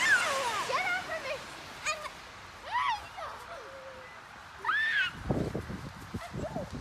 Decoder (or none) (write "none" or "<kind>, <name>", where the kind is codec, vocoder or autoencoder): none